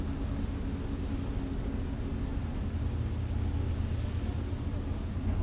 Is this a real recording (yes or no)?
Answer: yes